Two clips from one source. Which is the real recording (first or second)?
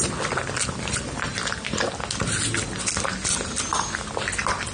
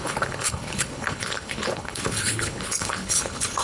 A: first